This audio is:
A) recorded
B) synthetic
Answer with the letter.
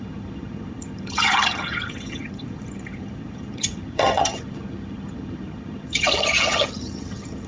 B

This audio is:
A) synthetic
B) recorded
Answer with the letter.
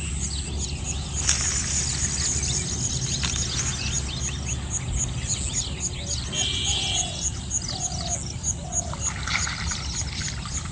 B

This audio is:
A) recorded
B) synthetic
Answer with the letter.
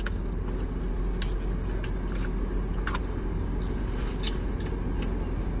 A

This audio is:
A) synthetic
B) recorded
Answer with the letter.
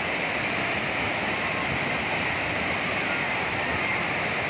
B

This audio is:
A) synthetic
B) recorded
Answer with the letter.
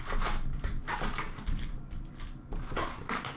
B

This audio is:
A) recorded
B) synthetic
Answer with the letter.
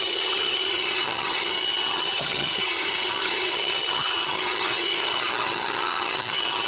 B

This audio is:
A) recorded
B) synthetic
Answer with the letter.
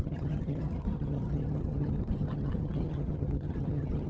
B